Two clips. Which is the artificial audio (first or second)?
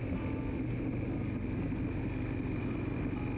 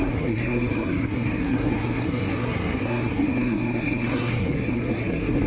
second